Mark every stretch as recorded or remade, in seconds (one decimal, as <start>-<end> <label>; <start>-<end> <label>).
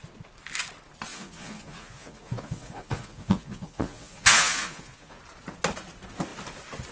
0.0-1.1 recorded; 1.1-5.2 remade; 5.2-6.9 recorded